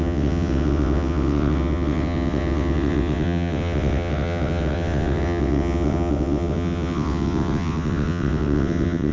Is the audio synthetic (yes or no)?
yes